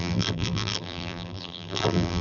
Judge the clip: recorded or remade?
remade